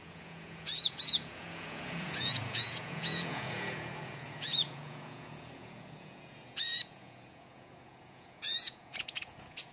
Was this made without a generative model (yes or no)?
no